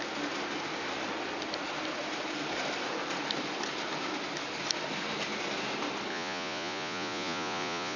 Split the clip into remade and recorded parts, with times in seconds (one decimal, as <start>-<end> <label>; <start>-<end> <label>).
0.0-6.1 recorded; 6.1-8.0 remade